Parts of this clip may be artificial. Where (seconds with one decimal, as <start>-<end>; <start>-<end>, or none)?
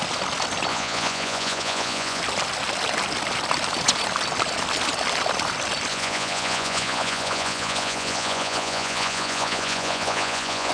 0.7-2.2; 5.9-10.7